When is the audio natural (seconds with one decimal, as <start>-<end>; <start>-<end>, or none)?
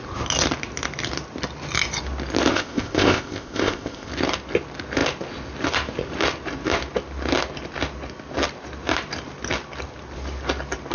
0.0-2.5; 4.1-10.9